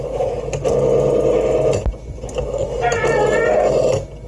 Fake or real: real